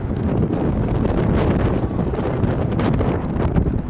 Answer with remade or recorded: recorded